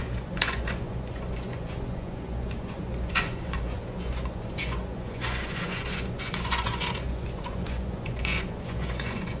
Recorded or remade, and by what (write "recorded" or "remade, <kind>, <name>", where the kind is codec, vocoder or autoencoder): remade, vocoder, Vocos